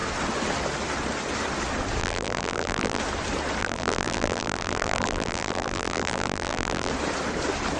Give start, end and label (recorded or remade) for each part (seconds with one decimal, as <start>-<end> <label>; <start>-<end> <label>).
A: 0.0-2.0 recorded; 2.0-3.0 remade; 3.0-3.6 recorded; 3.6-6.9 remade; 6.9-7.8 recorded